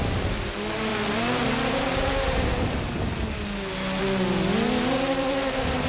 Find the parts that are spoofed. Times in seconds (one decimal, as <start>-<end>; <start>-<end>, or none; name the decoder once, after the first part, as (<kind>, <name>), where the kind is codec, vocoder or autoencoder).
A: none

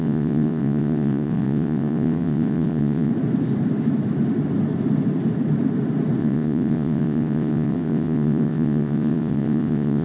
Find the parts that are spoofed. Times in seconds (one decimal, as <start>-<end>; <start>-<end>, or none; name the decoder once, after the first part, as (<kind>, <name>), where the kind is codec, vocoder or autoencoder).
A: 0.0-3.1 (vocoder, WaveNeXt); 6.2-10.0